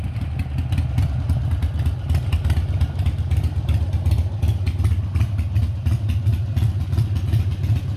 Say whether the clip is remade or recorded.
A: recorded